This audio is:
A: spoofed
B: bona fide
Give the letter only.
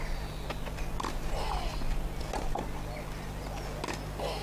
B